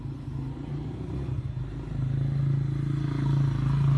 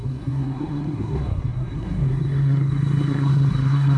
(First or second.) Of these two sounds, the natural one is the first